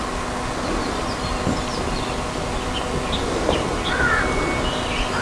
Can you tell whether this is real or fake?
real